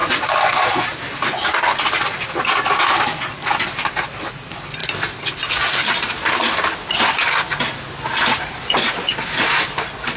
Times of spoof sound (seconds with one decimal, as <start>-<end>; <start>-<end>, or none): none